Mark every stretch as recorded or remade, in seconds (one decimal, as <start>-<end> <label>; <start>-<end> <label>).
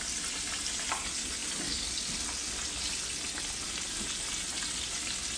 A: 0.0-5.4 recorded